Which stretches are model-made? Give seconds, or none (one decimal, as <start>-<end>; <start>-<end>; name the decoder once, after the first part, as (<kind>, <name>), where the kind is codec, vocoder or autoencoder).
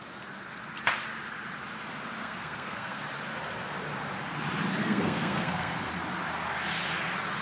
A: 2.2-3.0 (codec, SNAC); 4.8-5.9